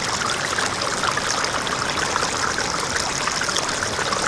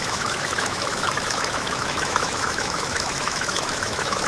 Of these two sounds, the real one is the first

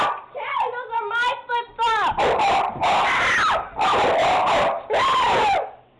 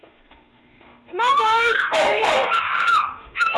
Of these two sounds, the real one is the first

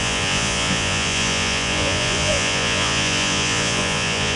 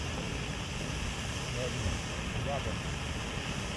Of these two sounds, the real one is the second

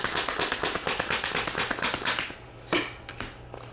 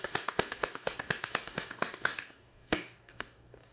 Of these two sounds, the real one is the first